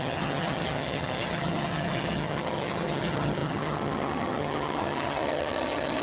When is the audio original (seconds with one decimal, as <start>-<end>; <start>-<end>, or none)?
none

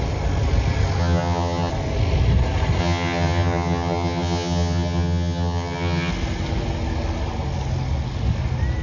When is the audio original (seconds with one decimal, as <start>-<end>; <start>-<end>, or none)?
0.0-1.0; 1.7-2.8; 6.1-8.8

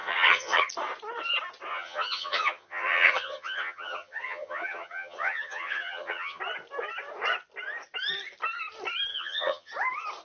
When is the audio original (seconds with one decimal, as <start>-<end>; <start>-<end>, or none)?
0.7-1.7; 6.4-9.1; 9.7-10.2